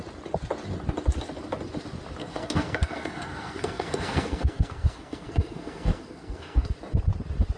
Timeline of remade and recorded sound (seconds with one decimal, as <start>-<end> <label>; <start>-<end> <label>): 0.0-2.2 recorded; 2.2-6.7 remade; 6.7-7.6 recorded